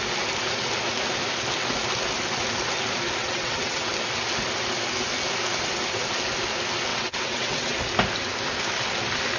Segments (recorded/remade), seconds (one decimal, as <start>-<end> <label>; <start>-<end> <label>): 0.0-3.2 recorded; 3.2-3.9 remade; 3.9-6.9 recorded; 6.9-7.8 remade; 7.8-9.4 recorded

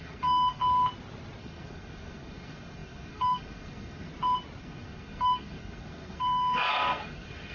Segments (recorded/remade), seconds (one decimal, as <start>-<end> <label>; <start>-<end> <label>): 0.0-0.6 remade; 0.6-1.4 recorded; 1.4-4.1 remade; 4.1-4.6 recorded; 4.6-7.5 remade

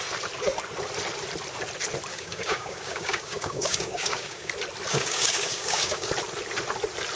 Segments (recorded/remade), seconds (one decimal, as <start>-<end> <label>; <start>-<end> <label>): 0.0-2.1 recorded; 2.1-4.5 remade; 4.5-4.9 recorded; 4.9-6.1 remade; 6.1-7.2 recorded

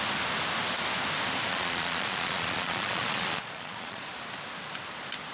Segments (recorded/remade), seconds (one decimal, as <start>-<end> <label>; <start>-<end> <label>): 0.0-1.5 recorded; 1.5-4.0 remade; 4.0-5.3 recorded

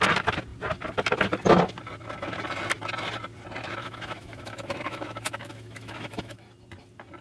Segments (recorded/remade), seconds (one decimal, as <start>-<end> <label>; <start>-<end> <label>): 0.0-3.8 recorded; 3.8-6.4 remade; 6.4-7.2 recorded

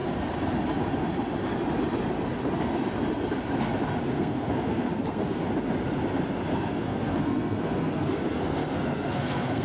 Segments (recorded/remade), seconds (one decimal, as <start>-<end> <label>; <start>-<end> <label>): 0.0-4.0 recorded; 4.0-5.4 remade; 5.4-6.5 recorded; 6.5-9.6 remade

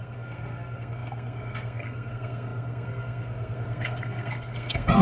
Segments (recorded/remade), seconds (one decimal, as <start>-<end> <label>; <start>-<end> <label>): 0.0-5.0 remade

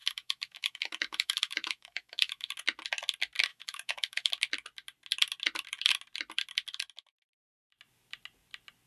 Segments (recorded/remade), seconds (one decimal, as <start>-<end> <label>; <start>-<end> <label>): 0.0-2.5 remade; 2.5-3.5 recorded; 3.5-4.3 remade; 4.3-8.9 recorded